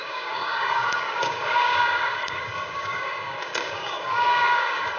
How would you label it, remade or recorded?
remade